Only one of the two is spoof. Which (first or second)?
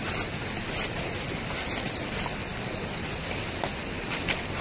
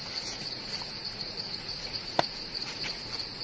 second